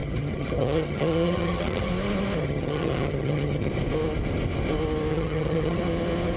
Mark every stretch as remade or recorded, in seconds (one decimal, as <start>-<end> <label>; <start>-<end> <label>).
0.0-1.9 remade; 1.9-2.4 recorded; 2.4-3.7 remade; 3.7-5.1 recorded; 5.1-5.8 remade; 5.8-6.4 recorded